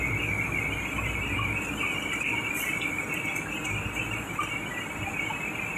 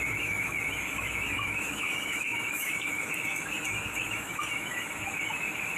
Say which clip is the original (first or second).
first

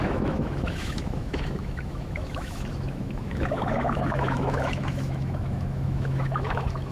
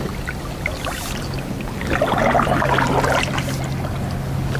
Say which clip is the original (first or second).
second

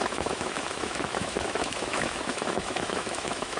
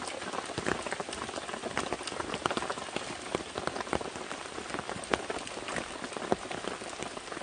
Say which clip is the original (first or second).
second